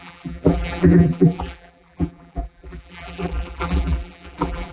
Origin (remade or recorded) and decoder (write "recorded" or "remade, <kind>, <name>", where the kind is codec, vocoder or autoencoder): remade, vocoder, BigVGAN v2